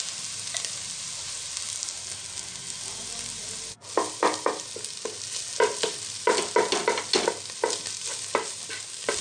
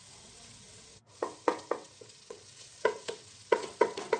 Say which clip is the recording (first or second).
first